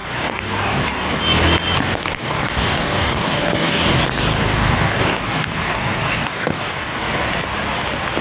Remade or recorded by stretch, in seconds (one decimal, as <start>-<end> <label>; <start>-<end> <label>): 0.0-1.2 remade; 1.2-2.2 recorded; 2.2-4.0 remade; 4.0-4.4 recorded; 4.4-7.3 remade; 7.3-8.2 recorded